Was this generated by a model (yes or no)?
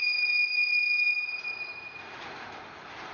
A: no